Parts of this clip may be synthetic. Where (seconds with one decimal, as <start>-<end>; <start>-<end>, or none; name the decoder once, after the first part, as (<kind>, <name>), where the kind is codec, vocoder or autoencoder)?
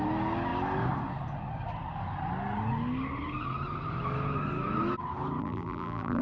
5.4-6.2 (vocoder, BigVGAN v2)